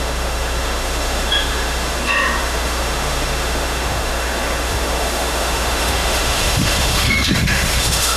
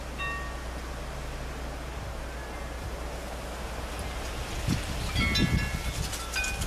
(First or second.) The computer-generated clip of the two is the first